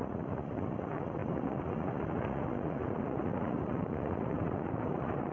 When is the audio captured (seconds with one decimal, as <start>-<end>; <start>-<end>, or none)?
none